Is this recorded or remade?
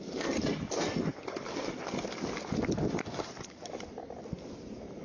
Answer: recorded